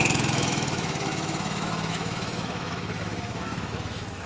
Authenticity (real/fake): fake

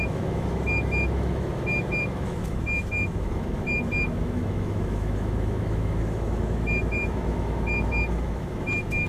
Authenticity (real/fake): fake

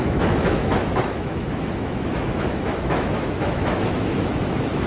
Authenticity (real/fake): fake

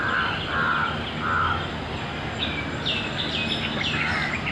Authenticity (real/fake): real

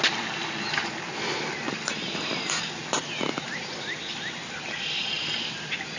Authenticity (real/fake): real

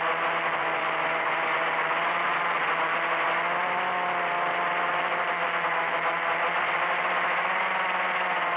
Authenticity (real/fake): real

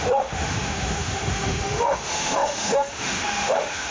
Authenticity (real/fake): fake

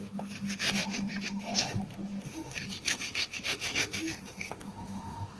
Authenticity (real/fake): fake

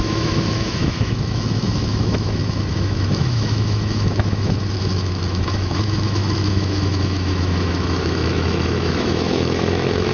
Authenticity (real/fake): fake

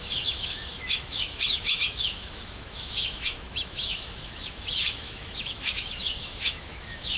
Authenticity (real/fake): fake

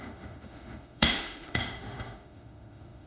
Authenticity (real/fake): fake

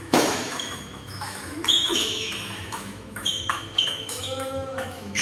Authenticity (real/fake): fake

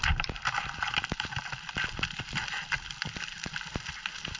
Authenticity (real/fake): real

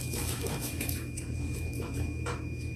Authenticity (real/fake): fake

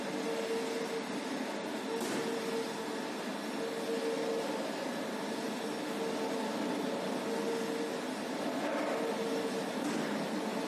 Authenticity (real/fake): real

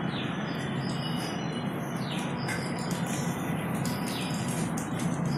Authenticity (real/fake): real